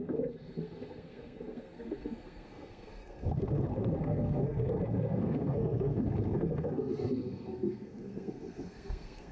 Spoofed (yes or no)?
yes